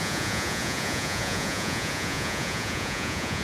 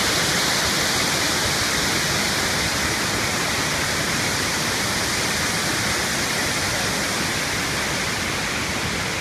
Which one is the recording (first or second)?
second